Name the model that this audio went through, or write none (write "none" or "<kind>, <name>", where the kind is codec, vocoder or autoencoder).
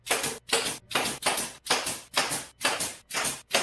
none